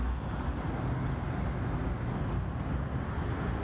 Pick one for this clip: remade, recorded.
recorded